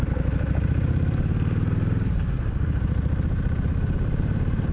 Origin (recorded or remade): remade